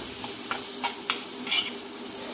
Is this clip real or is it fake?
real